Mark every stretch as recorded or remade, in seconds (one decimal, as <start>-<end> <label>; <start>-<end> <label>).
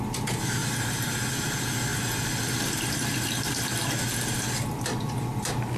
0.0-5.8 recorded